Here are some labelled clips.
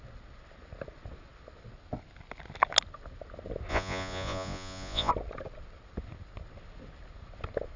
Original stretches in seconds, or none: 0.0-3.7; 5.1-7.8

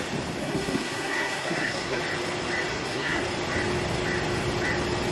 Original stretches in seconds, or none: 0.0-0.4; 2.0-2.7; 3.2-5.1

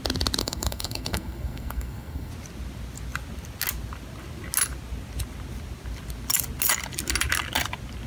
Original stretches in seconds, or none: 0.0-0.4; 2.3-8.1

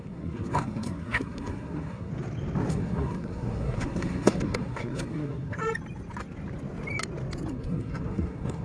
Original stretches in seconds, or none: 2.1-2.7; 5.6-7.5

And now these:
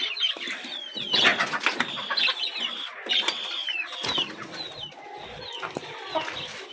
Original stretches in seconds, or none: 0.0-6.7

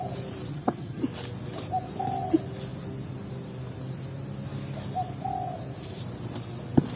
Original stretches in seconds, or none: 0.0-0.5; 1.0-7.0